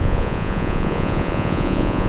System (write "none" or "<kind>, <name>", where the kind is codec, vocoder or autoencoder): vocoder, Vocos